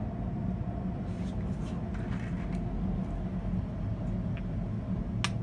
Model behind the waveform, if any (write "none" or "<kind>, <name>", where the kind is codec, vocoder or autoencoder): none